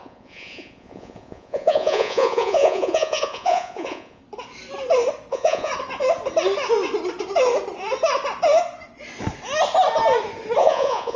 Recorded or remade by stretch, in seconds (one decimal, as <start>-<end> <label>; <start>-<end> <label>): 0.0-4.2 remade; 4.2-5.3 recorded; 5.3-5.7 remade; 5.7-10.6 recorded; 10.6-11.2 remade